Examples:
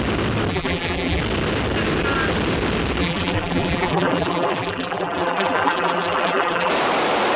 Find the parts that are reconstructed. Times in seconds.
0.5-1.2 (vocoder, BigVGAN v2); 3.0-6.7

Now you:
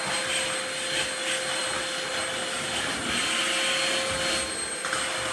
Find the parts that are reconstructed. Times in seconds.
none

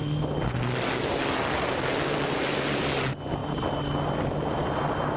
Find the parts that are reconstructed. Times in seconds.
none

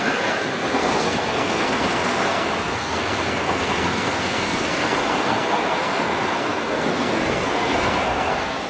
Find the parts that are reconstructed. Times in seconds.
0.0-8.7 (codec, SNAC)

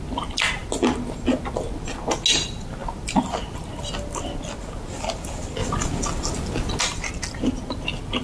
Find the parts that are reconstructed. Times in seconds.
none

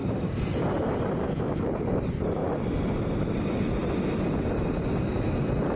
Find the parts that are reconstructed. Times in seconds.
0.0-1.3 (vocoder, BigVGAN v2)

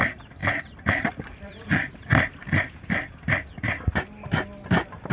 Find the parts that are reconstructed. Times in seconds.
0.4-3.5 (vocoder, BigVGAN v2)

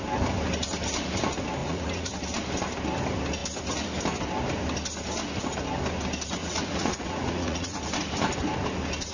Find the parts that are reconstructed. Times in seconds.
1.6-2.1 (vocoder, Vocos); 6.4-7.8